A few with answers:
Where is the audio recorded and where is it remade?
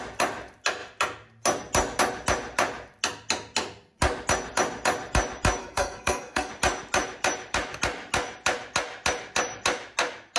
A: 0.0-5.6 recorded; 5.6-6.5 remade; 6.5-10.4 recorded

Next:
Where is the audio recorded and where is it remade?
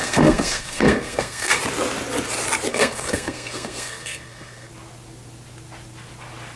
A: 0.0-1.6 remade; 1.6-2.7 recorded; 2.7-4.7 remade; 4.7-6.6 recorded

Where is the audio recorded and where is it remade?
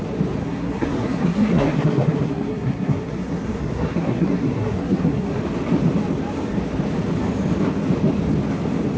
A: 0.0-0.4 recorded; 0.4-5.4 remade; 5.4-9.0 recorded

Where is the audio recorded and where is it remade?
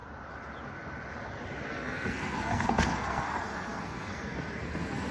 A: 0.0-1.7 recorded; 1.7-5.1 remade